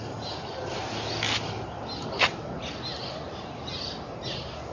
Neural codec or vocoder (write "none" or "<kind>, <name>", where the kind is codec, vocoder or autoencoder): none